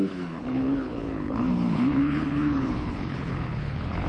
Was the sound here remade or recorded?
remade